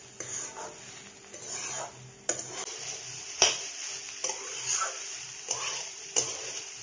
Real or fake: real